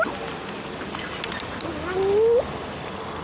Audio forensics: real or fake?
real